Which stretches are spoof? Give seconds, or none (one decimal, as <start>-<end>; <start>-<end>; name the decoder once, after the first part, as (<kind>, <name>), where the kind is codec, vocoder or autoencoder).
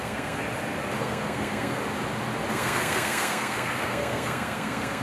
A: 0.0-0.4 (codec, SNAC); 1.0-1.8; 2.5-5.0